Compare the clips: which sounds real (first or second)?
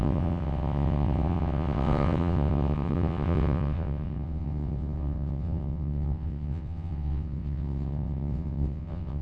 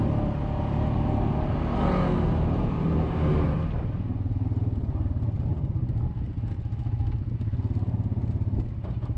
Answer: second